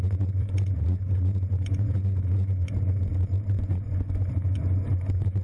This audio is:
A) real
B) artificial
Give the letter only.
B